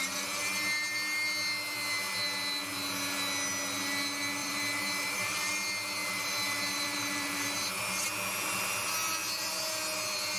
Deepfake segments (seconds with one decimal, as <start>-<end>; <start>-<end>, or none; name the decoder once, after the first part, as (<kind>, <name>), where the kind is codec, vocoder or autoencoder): 4.4-5.5 (vocoder, BigVGAN v2); 6.0-7.7; 9.2-9.8